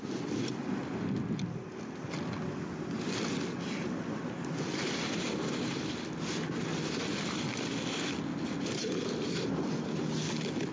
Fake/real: real